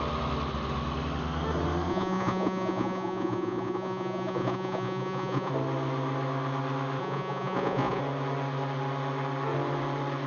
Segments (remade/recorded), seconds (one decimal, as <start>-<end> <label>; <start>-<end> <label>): 0.0-1.9 recorded; 1.9-5.5 remade; 5.5-7.0 recorded; 7.0-8.0 remade; 8.0-10.3 recorded